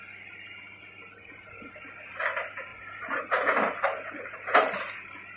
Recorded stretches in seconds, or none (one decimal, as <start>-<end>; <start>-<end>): 0.0-5.4

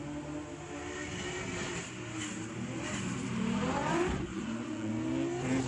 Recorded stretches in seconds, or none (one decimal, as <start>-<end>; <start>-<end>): 0.0-3.8; 4.9-5.7

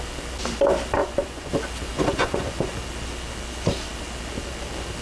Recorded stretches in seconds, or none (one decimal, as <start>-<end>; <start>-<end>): 0.0-1.0; 1.5-1.9; 2.7-5.0

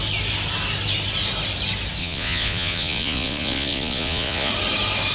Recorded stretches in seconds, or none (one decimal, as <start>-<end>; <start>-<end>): 0.0-2.0; 4.5-5.1

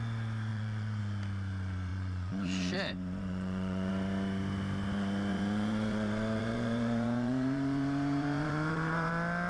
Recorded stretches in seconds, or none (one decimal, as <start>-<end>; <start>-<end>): 0.0-0.5; 1.0-1.9; 3.9-5.3; 9.1-9.5

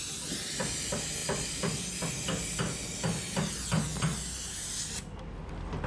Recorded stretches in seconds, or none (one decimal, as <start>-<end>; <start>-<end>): 0.0-5.9

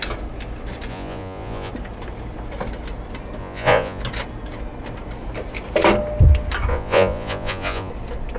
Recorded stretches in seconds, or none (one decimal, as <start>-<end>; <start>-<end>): 0.0-0.9; 1.7-3.4; 4.0-6.7; 7.9-8.4

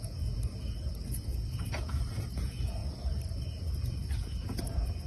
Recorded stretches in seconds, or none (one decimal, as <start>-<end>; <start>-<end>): 0.4-1.0; 2.8-3.6